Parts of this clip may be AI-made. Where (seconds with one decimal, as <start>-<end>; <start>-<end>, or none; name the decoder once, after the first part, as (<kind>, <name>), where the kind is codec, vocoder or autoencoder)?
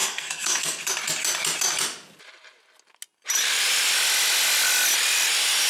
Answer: 0.0-0.8 (codec, SNAC)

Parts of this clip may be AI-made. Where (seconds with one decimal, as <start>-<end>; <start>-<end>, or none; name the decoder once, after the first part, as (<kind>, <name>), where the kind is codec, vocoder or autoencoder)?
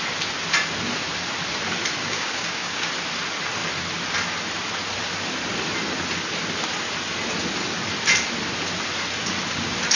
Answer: 2.0-2.9 (codec, DAC)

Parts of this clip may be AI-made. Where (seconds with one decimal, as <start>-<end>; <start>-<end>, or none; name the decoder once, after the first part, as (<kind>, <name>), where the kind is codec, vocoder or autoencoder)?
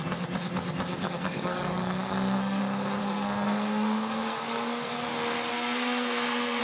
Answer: 0.9-2.6 (codec, SNAC); 3.0-4.9; 5.5-6.6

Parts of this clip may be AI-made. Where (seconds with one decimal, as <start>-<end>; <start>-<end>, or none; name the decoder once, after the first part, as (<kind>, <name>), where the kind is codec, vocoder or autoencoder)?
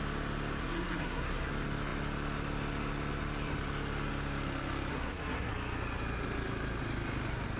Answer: 0.6-1.5 (codec, SNAC); 4.9-5.5